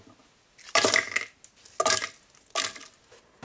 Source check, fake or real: real